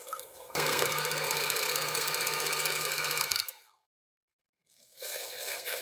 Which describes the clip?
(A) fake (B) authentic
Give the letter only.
A